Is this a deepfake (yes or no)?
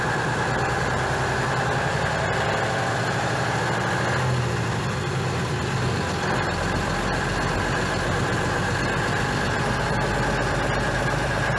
no